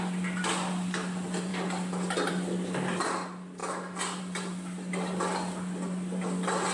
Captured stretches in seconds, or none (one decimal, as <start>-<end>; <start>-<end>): 0.0-6.7